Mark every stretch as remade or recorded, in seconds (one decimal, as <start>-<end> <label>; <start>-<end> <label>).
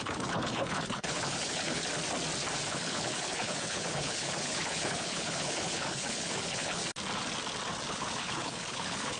0.0-1.8 remade; 1.8-2.7 recorded; 2.7-6.8 remade; 6.8-7.9 recorded; 7.9-9.2 remade